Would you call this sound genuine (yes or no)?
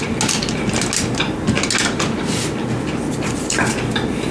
yes